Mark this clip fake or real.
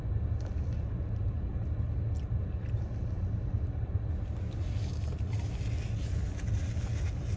real